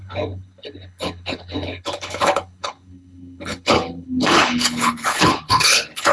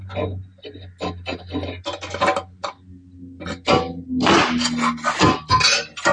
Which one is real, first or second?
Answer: second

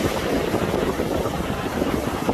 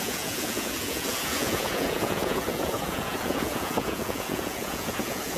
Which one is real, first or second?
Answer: first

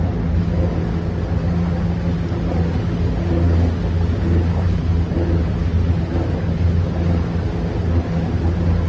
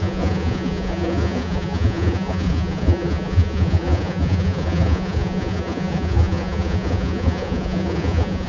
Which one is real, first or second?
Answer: first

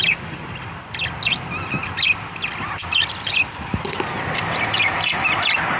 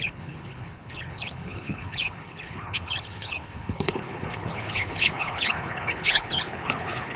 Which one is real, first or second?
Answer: first